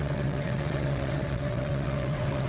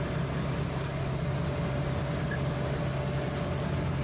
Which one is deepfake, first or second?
first